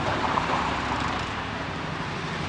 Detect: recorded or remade remade